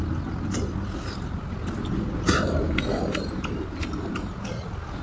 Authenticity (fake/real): real